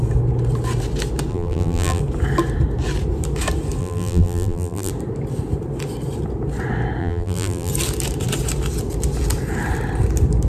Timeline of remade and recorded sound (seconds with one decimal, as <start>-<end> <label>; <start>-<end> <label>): 0.0-1.3 recorded; 1.3-2.0 remade; 2.0-3.8 recorded; 3.8-4.9 remade; 4.9-7.0 recorded; 7.0-7.7 remade; 7.7-10.5 recorded